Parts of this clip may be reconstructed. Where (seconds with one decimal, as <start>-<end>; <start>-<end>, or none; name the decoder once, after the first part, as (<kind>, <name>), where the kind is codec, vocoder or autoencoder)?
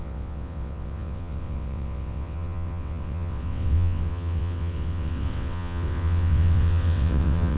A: 0.0-7.6 (vocoder, WaveNeXt)